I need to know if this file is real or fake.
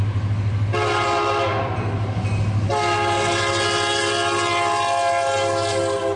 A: real